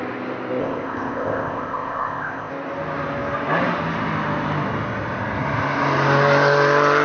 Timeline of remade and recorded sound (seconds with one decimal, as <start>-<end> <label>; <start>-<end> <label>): 0.0-0.6 recorded; 0.6-2.5 remade; 2.5-7.0 recorded